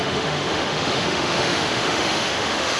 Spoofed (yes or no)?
yes